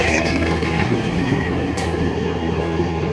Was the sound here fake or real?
fake